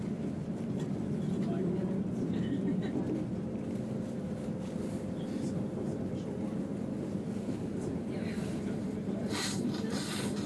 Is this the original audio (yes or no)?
no